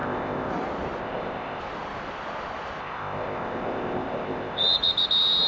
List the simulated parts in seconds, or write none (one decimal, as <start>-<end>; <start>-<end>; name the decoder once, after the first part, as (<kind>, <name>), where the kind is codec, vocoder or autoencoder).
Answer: 0.0-0.5 (codec, ZipCodec); 1.0-1.6; 2.8-4.6